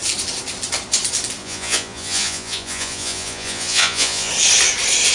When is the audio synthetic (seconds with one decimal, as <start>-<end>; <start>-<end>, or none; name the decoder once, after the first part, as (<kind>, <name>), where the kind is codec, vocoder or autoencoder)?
1.4-4.3 (vocoder, Vocos)